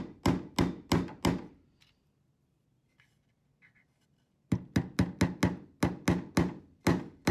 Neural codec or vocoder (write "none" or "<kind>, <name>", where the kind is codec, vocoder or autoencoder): none